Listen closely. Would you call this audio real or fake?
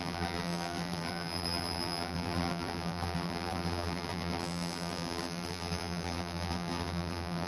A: fake